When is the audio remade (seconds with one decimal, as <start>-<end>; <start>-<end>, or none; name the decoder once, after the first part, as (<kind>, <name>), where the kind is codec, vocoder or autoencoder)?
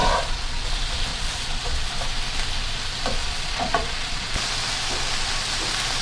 0.0-0.6 (vocoder, Vocos); 1.1-2.0; 3.2-4.3